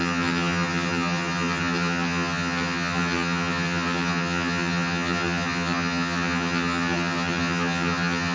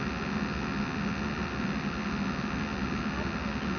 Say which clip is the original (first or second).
second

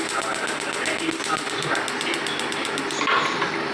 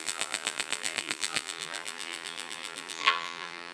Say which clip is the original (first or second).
first